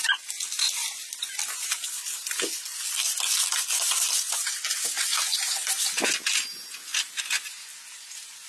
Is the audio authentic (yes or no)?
yes